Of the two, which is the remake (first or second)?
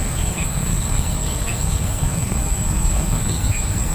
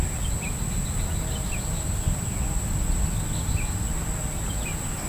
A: first